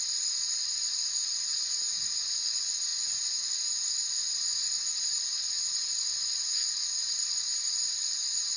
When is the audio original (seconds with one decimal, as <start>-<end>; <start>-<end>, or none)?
0.0-8.6